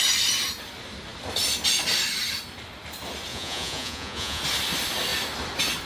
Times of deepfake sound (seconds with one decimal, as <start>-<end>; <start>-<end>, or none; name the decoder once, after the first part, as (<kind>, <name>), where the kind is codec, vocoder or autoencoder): 3.3-4.4 (vocoder, Vocos)